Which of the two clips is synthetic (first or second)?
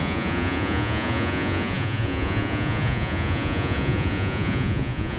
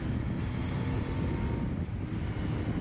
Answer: first